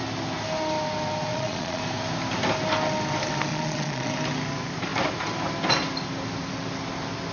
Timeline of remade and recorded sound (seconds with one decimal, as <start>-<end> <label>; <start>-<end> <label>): 0.0-1.3 recorded; 1.3-1.8 remade; 1.8-3.5 recorded; 3.5-4.1 remade; 4.1-7.3 recorded